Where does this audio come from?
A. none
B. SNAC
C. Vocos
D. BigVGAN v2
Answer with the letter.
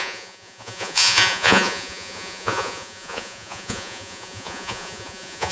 C